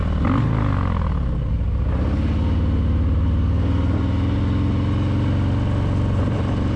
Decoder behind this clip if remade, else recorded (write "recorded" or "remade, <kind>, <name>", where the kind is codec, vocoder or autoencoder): recorded